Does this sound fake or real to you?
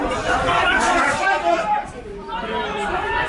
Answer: fake